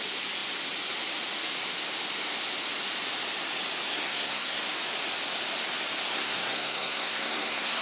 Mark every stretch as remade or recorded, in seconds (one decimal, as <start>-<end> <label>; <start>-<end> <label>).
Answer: 0.0-3.9 recorded; 3.9-4.6 remade; 4.6-6.1 recorded; 6.1-7.8 remade